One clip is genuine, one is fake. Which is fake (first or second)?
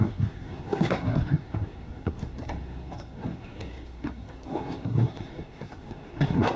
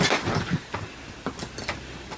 first